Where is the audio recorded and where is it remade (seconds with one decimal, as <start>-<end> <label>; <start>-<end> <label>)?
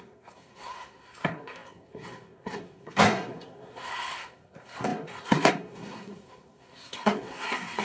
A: 0.0-7.8 remade